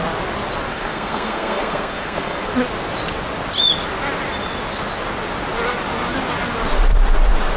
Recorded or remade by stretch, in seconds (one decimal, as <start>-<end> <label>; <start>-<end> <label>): 0.0-0.7 recorded; 0.7-2.5 remade; 2.5-7.6 recorded

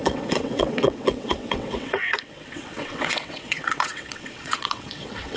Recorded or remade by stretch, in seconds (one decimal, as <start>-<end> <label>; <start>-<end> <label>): 0.0-5.4 remade